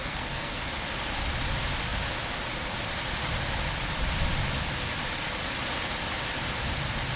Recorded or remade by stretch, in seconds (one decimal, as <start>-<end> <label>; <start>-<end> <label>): 0.0-0.7 remade; 0.7-7.2 recorded